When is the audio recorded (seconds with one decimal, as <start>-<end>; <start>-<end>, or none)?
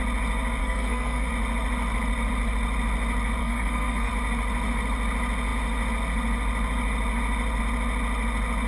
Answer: 0.0-0.6; 1.3-3.4; 4.1-8.7